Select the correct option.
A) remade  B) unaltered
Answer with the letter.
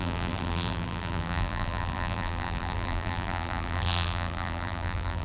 A